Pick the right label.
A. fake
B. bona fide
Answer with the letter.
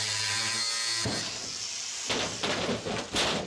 B